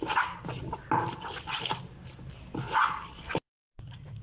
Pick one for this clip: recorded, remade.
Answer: recorded